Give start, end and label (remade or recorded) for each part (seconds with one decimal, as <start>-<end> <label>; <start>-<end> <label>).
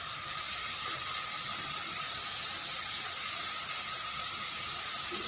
0.0-5.3 recorded